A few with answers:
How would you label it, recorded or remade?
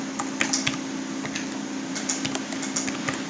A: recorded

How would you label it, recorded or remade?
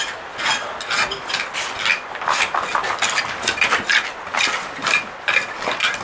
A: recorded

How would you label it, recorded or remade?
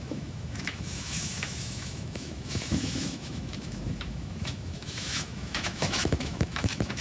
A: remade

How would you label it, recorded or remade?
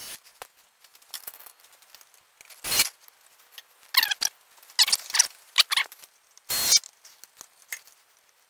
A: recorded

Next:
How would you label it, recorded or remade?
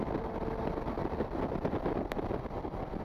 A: recorded